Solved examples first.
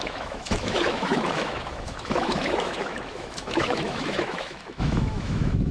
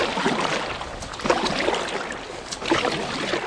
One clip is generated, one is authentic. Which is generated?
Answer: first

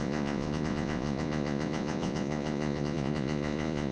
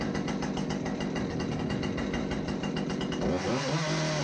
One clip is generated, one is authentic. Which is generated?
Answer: first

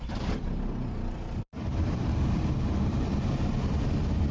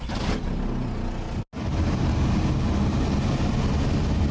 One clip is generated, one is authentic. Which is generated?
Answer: first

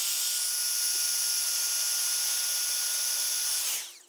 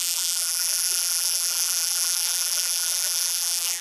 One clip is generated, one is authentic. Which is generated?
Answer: second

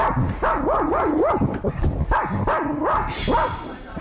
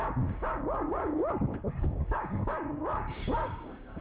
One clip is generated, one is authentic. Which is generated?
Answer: second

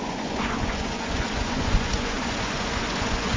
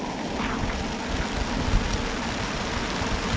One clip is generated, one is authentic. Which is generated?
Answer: first